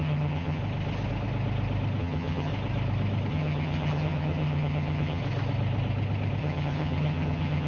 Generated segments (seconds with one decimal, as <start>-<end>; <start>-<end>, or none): 0.0-0.6; 2.0-2.5; 3.3-5.2; 6.4-7.7